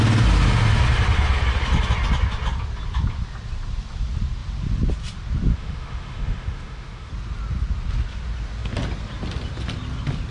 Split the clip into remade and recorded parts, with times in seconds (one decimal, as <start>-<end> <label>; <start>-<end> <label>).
0.0-5.5 recorded; 5.5-7.1 remade; 7.1-10.3 recorded